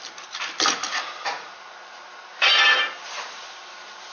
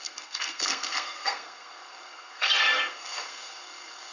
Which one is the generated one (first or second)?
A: second